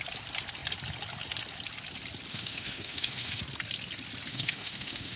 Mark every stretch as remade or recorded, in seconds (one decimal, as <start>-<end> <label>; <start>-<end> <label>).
0.0-2.3 recorded; 2.3-3.4 remade; 3.4-4.3 recorded; 4.3-5.2 remade